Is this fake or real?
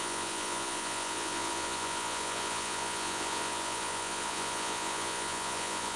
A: fake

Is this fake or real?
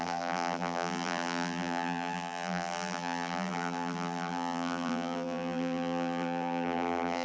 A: fake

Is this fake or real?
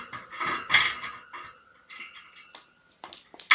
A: real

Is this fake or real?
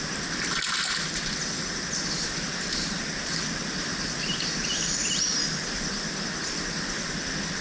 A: real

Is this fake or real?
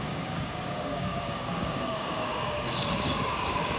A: fake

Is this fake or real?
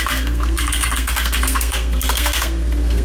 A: fake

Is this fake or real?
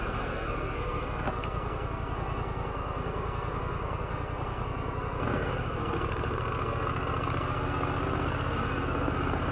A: fake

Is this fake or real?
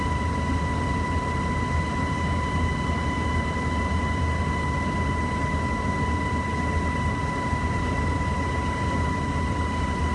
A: real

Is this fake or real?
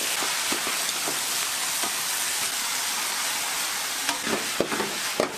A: real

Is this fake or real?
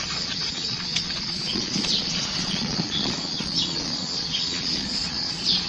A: fake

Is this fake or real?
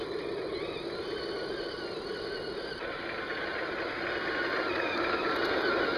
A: real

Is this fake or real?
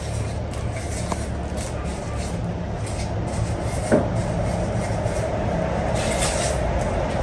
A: real